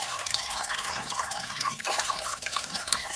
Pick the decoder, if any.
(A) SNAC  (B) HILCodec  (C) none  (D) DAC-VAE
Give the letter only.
A